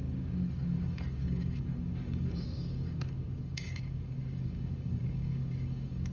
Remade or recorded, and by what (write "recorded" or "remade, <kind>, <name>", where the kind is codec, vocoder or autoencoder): remade, codec, DAC